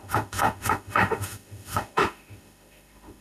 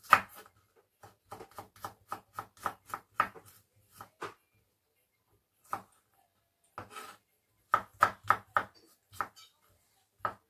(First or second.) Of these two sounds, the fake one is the first